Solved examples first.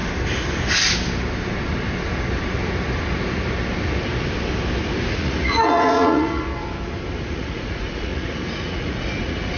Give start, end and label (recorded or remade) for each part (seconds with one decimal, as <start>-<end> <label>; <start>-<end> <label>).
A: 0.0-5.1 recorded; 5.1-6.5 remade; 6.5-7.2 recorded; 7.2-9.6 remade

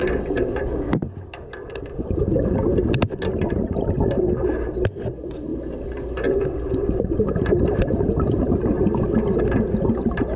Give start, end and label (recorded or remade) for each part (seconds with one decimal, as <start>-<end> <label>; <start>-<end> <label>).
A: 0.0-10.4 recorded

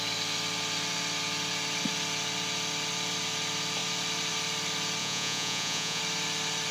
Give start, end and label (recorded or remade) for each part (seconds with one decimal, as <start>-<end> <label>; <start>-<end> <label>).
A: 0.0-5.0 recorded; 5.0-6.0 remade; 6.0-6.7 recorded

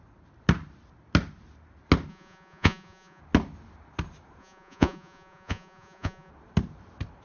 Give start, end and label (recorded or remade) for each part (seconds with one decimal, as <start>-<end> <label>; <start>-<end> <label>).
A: 0.0-2.1 recorded; 2.1-3.2 remade; 3.2-4.4 recorded; 4.4-6.3 remade; 6.3-7.2 recorded